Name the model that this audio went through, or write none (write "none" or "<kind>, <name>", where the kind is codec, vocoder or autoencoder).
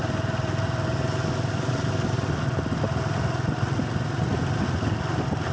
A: none